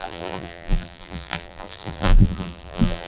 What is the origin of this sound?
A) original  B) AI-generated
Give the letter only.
B